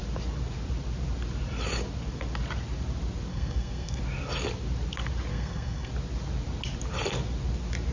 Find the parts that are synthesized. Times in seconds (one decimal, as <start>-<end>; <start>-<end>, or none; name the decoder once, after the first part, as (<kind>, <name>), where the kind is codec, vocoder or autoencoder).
3.3-4.0 (codec, SNAC); 5.3-5.9